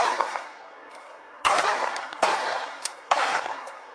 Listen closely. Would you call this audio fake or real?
fake